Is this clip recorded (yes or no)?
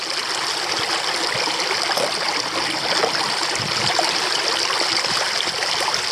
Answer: yes